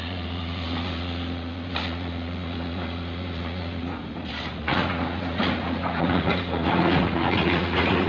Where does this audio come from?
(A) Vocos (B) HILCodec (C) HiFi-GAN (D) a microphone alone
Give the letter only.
A